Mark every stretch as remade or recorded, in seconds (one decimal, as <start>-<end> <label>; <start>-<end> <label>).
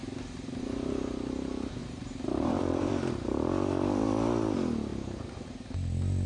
0.0-1.8 recorded; 1.8-2.9 remade; 2.9-6.3 recorded